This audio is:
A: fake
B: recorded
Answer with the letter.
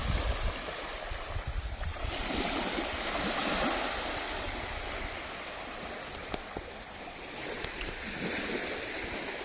A